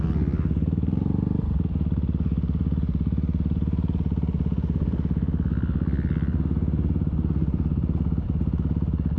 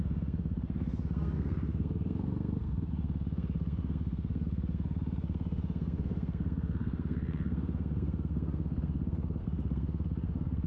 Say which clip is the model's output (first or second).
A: second